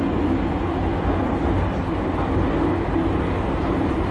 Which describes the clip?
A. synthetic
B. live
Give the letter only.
B